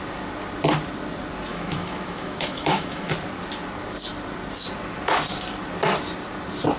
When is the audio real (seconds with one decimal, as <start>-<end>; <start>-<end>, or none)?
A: 0.0-1.5; 3.1-6.8